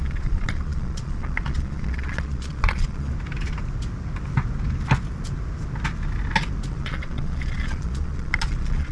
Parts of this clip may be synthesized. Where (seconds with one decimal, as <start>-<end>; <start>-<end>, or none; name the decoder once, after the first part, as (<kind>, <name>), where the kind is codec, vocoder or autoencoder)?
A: 0.0-3.1 (vocoder, Vocos); 6.7-8.9